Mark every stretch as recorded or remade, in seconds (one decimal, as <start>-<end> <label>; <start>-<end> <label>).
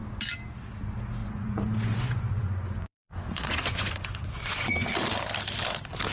0.0-1.2 recorded; 1.2-4.9 remade; 4.9-6.1 recorded